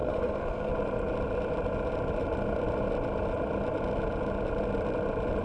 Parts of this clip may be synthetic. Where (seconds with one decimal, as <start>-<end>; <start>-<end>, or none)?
0.0-0.7